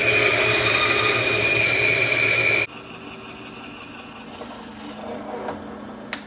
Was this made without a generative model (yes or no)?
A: yes